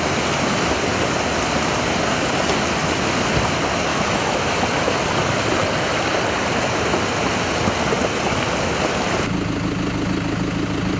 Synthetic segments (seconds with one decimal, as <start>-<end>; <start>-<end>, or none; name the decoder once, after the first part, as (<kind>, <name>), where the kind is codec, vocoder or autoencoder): 3.9-4.5 (autoencoder, DAC-VAE)